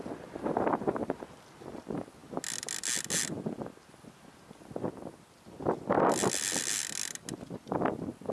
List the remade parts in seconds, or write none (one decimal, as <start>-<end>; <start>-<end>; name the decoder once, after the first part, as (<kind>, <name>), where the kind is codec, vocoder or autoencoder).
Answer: none